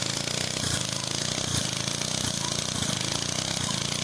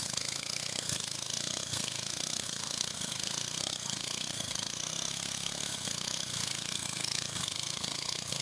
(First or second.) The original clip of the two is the first